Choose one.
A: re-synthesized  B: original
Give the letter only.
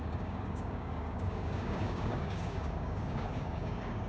A